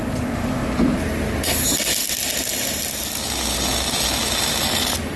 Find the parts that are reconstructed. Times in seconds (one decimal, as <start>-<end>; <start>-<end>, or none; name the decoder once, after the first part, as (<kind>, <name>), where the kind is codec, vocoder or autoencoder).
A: 2.5-3.0 (vocoder, BigVGAN v2)